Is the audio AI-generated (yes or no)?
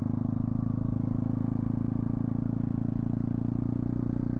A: no